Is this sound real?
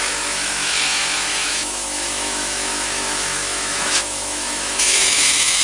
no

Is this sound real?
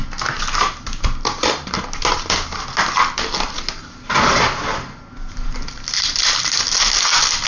yes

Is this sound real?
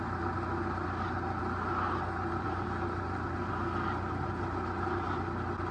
yes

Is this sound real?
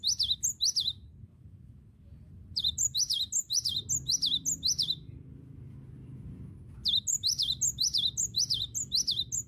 yes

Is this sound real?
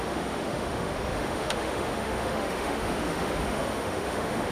no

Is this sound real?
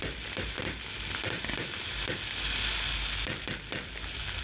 yes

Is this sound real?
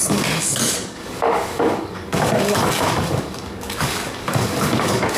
no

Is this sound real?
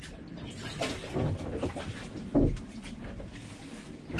yes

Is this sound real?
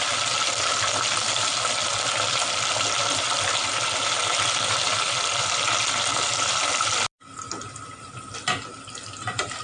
yes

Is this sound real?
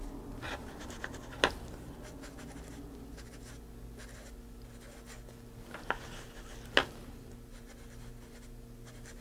yes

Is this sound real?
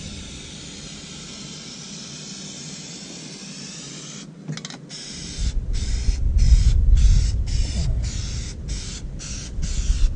yes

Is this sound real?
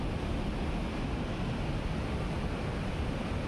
yes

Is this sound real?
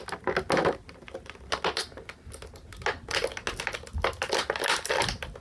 yes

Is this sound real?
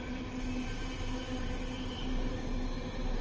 yes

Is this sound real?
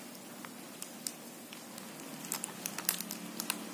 yes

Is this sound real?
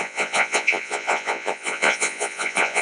no